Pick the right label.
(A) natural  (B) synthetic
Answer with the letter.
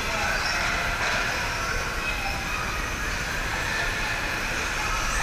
A